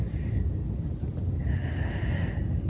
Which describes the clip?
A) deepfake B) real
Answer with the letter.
B